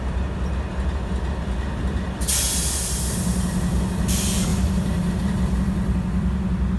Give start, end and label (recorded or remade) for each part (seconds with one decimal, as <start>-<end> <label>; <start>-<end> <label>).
0.0-4.5 recorded; 4.5-5.1 remade; 5.1-6.8 recorded